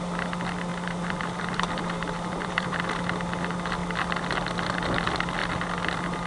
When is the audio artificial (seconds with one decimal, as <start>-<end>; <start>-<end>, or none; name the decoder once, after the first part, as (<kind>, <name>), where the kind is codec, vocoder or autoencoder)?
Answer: 0.7-2.8 (vocoder, BigVGAN v2)